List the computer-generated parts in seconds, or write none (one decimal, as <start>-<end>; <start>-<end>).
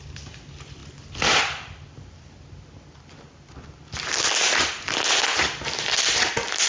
none